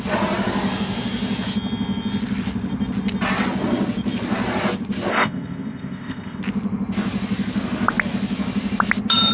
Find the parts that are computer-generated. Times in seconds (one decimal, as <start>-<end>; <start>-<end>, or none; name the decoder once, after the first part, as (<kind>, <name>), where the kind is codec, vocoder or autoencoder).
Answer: 5.1-6.4 (codec, ZipCodec)